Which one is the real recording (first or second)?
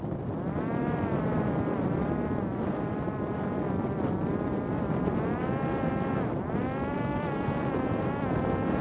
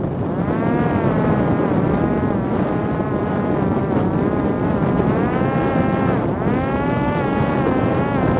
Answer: second